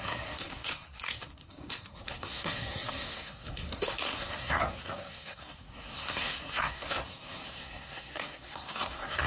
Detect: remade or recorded remade